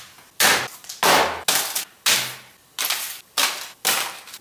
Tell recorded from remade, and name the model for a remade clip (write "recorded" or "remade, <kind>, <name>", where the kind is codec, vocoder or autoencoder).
recorded